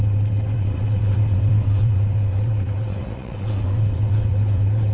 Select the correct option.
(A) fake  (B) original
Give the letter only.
A